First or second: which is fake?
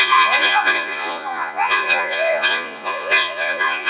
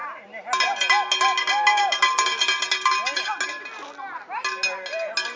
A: first